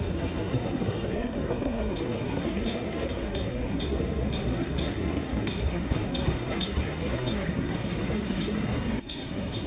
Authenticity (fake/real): fake